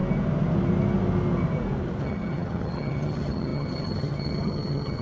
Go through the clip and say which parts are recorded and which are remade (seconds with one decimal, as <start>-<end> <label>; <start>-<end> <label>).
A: 0.0-2.0 recorded; 2.0-5.0 remade